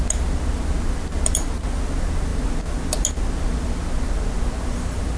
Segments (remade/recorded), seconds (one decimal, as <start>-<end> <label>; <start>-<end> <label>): 0.0-5.2 recorded